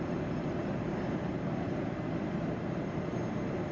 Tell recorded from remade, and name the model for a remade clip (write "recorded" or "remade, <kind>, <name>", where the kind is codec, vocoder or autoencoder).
remade, vocoder, BigVGAN v2